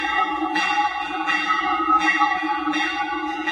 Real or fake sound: fake